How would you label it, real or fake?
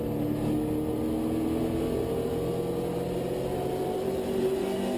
real